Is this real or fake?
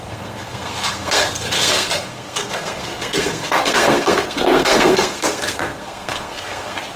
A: fake